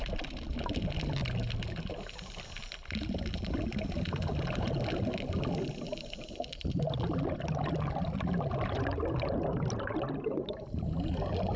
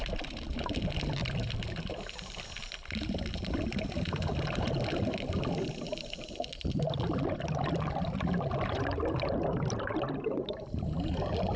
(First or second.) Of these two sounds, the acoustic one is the first